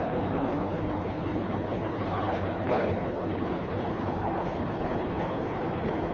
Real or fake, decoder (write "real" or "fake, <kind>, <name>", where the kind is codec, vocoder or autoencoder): fake, codec, HILCodec